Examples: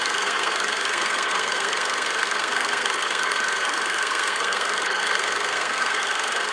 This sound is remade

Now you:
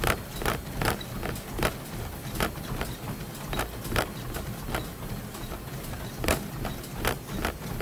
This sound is recorded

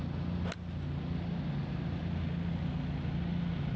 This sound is recorded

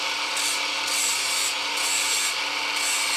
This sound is recorded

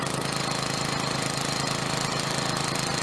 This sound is recorded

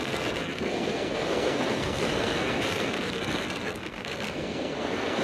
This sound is remade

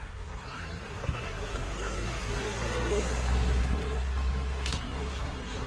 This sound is remade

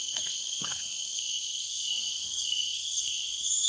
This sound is remade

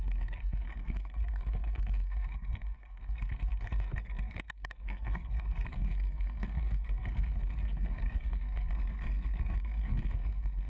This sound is remade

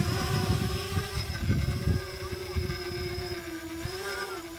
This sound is recorded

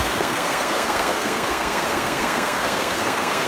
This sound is remade